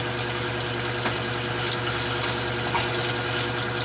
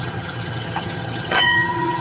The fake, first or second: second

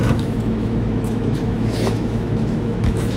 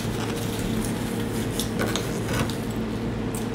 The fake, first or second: first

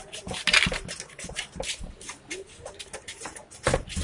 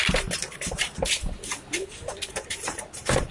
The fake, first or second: second